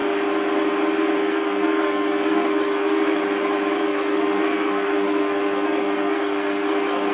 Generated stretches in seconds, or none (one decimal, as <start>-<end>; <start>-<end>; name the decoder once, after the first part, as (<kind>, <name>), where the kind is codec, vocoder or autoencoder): 1.2-3.2 (codec, SNAC); 3.8-7.1